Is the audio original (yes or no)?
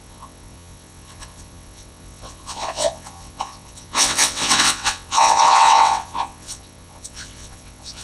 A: no